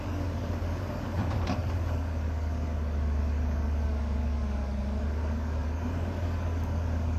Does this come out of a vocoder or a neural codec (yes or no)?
yes